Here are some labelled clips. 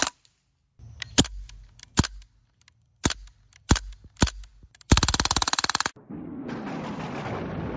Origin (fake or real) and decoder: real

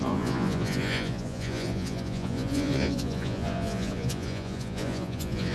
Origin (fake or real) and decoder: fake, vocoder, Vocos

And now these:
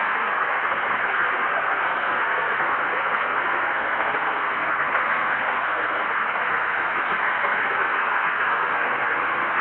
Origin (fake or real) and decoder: fake, codec, SNAC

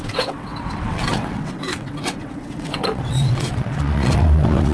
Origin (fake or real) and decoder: fake, vocoder, WaveNeXt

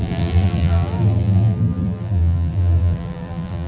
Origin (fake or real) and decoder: fake, vocoder, BigVGAN v2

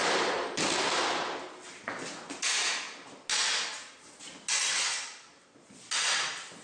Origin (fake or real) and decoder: real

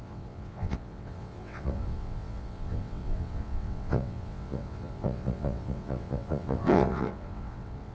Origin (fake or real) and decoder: fake, vocoder, WaveNeXt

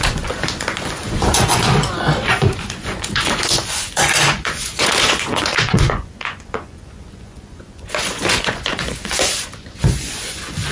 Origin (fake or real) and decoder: fake, vocoder, Vocos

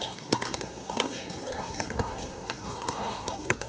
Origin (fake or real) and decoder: fake, codec, SNAC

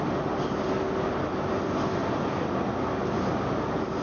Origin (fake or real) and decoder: real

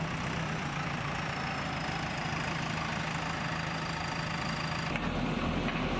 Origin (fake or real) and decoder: real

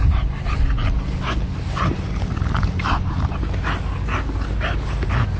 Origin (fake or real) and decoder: real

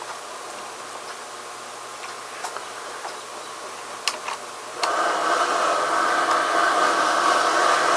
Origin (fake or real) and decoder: real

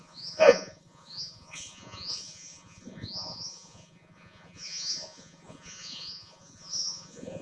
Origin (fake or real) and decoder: fake, vocoder, Vocos